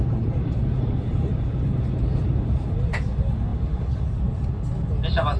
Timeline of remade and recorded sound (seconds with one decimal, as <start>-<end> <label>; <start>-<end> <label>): 0.0-2.7 remade; 2.7-3.5 recorded; 3.5-4.2 remade; 4.2-5.4 recorded